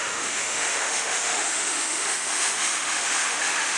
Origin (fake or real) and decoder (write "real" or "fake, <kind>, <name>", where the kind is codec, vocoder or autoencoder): fake, autoencoder, DAC-VAE